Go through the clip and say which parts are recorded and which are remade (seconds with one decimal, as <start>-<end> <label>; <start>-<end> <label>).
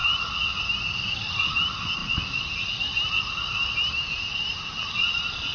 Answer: 0.0-5.5 recorded